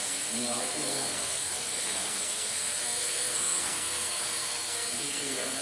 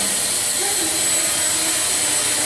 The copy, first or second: first